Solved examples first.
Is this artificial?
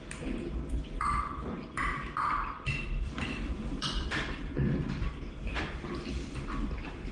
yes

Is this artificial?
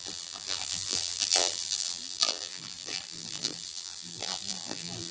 yes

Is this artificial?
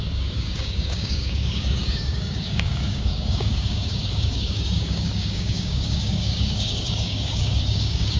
yes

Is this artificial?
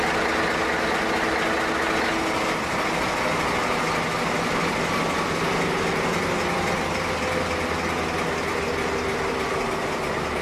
no